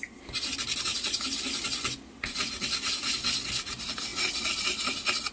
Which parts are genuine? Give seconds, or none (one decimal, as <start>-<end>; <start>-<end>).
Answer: 0.0-5.3